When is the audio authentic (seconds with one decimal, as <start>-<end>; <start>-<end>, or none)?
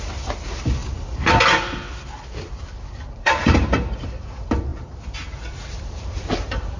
0.8-2.4; 4.7-5.8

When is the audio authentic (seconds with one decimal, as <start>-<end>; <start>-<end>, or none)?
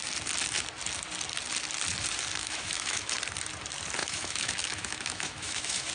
0.0-2.4; 3.1-4.0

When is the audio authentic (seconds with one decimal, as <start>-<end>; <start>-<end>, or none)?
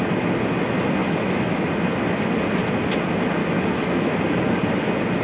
0.0-1.0; 1.7-3.4; 4.2-5.2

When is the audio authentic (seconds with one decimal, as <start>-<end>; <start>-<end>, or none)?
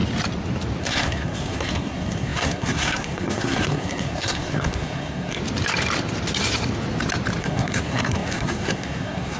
0.0-0.8; 5.4-7.4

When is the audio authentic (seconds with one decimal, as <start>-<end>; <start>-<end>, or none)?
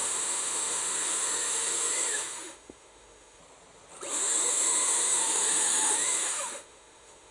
3.4-4.1